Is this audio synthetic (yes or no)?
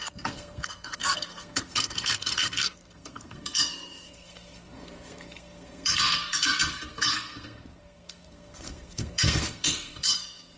yes